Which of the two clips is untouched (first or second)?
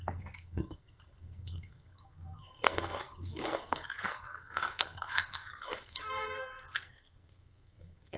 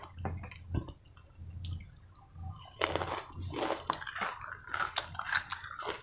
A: second